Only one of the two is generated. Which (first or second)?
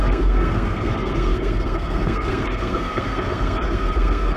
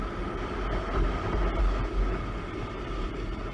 first